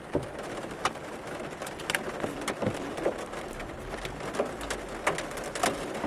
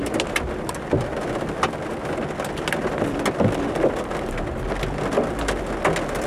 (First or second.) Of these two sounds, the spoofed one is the first